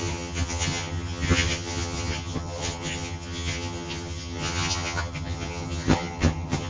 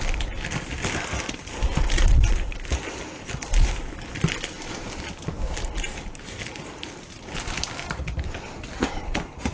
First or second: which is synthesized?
first